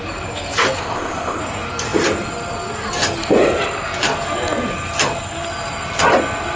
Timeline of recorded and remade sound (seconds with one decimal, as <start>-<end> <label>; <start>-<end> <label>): 0.0-0.8 recorded; 0.8-1.4 remade; 1.4-6.6 recorded